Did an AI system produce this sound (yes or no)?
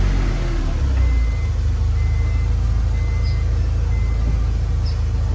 no